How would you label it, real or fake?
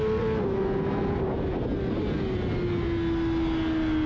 real